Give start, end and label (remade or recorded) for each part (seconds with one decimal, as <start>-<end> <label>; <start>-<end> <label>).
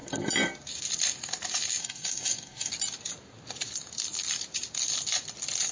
0.0-1.8 recorded; 1.8-2.7 remade; 2.7-5.7 recorded